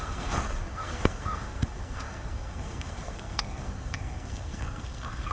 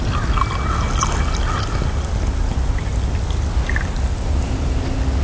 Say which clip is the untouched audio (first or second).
second